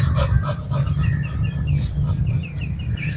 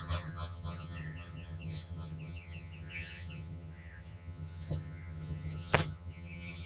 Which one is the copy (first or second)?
second